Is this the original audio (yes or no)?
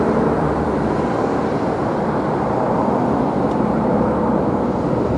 no